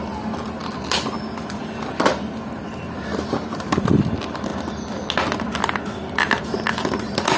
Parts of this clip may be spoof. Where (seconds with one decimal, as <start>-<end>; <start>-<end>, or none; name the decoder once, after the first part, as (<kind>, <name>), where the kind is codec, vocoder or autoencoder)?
none